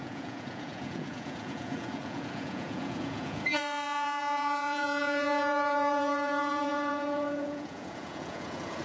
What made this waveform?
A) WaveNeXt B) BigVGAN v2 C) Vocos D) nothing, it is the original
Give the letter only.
C